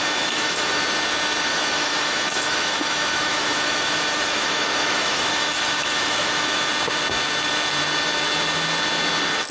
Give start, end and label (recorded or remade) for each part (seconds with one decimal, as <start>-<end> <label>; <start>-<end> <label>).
0.0-0.8 remade; 0.8-1.5 recorded; 1.5-6.7 remade; 6.7-9.5 recorded